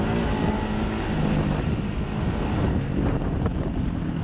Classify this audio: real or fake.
real